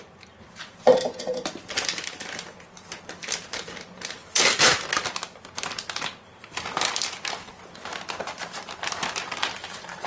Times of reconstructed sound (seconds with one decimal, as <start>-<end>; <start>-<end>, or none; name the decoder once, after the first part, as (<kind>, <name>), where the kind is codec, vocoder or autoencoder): 0.0-10.1 (vocoder, BigVGAN v2)